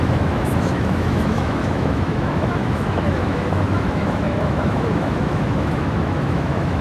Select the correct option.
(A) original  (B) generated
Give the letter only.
B